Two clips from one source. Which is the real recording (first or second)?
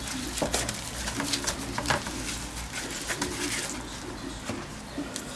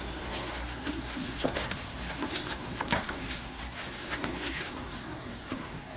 first